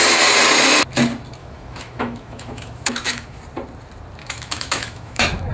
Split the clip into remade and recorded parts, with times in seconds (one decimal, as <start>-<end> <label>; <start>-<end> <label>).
0.0-1.4 recorded; 1.4-3.4 remade; 3.4-4.2 recorded; 4.2-5.5 remade